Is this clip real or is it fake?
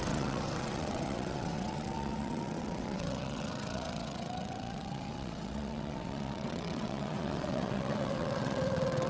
fake